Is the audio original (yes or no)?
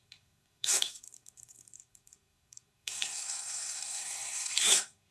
no